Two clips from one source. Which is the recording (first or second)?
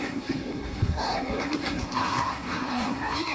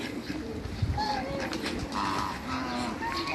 second